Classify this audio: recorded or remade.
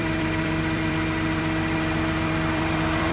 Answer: remade